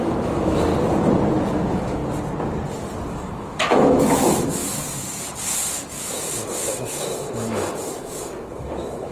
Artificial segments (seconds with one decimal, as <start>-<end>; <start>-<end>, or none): 0.0-0.7; 1.5-2.0; 3.1-4.6; 5.9-9.1